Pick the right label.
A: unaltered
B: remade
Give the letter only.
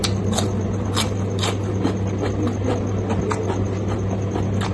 A